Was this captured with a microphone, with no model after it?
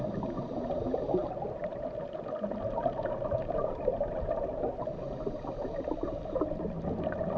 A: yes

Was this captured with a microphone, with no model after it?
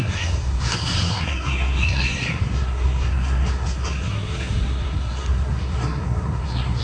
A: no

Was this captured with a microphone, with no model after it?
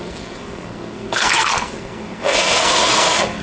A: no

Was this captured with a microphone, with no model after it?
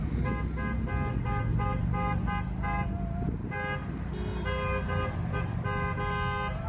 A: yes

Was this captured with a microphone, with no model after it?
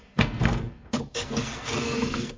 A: no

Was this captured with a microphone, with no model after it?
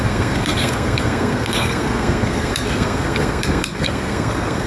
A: no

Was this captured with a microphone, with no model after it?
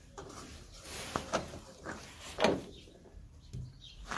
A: yes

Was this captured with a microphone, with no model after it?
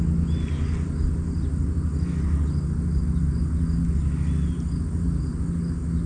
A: yes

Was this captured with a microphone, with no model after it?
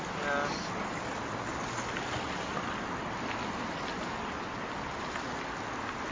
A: yes